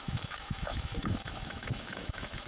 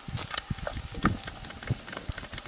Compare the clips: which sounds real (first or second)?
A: second